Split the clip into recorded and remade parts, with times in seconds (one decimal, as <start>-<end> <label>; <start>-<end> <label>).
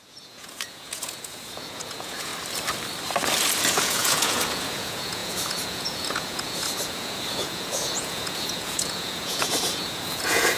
0.0-2.3 remade; 2.3-3.6 recorded; 3.6-10.6 remade